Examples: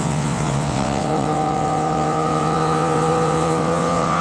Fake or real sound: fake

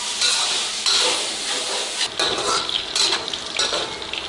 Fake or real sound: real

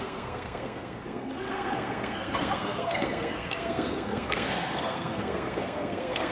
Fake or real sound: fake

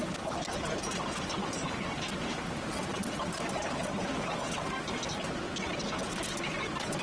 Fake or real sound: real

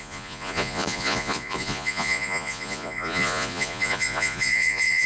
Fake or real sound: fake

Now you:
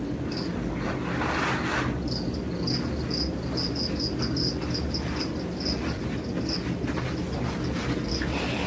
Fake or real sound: real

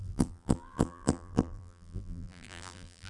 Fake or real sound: fake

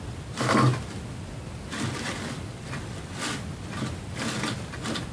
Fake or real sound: real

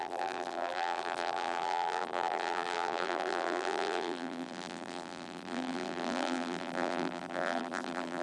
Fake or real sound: fake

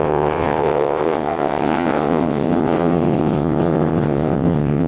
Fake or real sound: fake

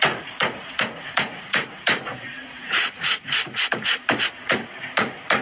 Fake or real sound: fake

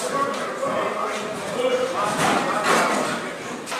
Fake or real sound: real